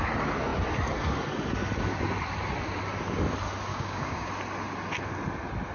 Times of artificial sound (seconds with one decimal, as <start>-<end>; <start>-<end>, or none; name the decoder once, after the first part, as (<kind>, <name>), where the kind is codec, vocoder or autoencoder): 3.7-4.3 (codec, DAC)